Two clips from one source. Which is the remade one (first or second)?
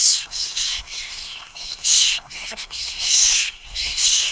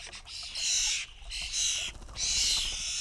first